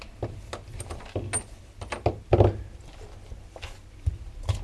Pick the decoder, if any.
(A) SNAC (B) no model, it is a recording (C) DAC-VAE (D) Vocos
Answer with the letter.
B